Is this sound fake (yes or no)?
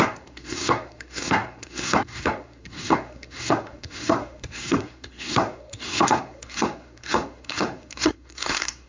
yes